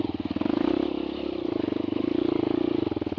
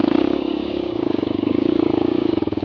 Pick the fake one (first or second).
second